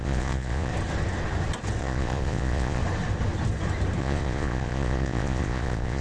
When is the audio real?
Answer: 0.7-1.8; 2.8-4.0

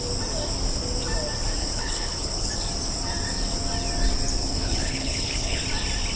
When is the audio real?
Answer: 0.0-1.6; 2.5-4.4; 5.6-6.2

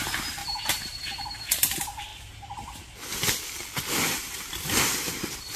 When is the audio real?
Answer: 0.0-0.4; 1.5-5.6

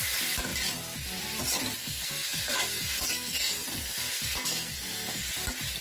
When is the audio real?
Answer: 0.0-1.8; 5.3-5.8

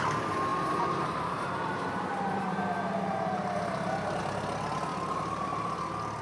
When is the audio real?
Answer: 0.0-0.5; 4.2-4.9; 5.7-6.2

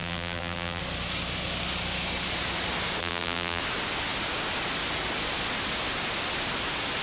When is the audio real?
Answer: 0.8-3.0; 3.6-7.0

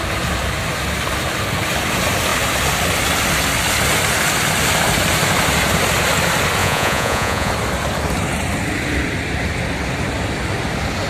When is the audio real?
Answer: 0.0-6.6; 7.5-11.1

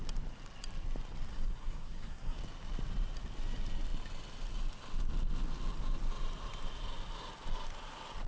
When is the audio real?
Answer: 0.0-1.3; 2.4-8.3